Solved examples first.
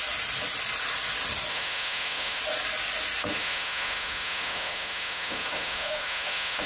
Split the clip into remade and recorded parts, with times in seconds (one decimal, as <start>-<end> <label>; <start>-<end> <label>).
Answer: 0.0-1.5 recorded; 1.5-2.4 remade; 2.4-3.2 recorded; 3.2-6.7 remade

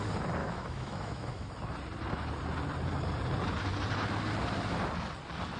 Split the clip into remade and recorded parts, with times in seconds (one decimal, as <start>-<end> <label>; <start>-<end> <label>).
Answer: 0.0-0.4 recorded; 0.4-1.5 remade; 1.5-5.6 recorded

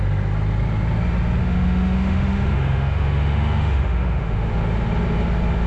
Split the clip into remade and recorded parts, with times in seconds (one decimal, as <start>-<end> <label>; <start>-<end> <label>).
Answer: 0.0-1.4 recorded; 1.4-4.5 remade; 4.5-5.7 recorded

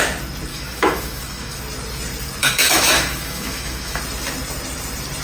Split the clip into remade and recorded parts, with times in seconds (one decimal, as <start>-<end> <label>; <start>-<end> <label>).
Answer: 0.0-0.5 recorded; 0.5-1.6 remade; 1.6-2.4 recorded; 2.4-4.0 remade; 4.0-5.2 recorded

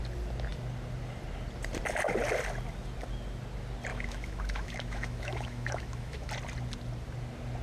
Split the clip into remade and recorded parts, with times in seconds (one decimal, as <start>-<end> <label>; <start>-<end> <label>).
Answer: 0.0-3.9 recorded; 3.9-6.3 remade; 6.3-7.6 recorded

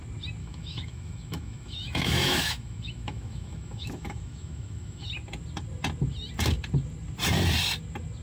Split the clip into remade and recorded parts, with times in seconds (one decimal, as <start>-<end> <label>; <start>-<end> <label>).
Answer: 0.0-0.4 recorded; 0.4-5.1 remade; 5.1-8.2 recorded